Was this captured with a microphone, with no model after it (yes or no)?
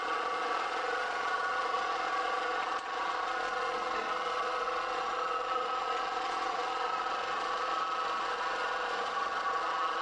no